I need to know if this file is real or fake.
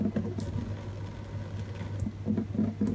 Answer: real